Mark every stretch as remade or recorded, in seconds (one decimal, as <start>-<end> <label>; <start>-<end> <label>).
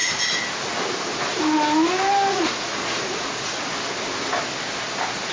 0.0-2.3 recorded; 2.3-3.7 remade; 3.7-5.3 recorded